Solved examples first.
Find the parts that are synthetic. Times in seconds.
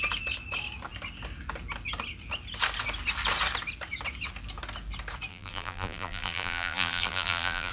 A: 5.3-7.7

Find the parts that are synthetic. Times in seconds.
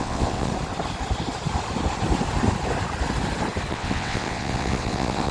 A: 0.0-0.5; 3.7-5.3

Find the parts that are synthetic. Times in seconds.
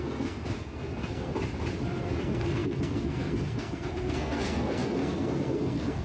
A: 0.0-1.3; 2.0-6.0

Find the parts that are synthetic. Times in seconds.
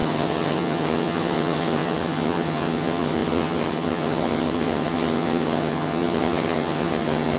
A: 0.0-7.4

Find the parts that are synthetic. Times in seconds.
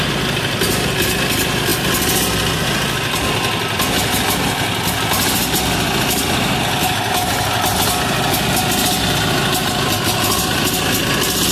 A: none